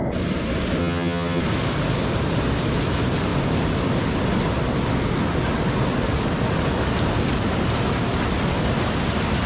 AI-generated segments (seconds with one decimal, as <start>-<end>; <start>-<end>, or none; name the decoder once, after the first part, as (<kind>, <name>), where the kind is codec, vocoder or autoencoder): 0.8-1.4 (vocoder, HiFi-GAN)